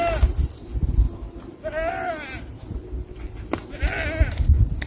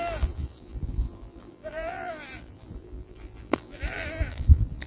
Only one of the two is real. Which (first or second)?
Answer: first